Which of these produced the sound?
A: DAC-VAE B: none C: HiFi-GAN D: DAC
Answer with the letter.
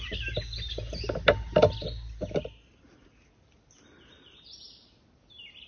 B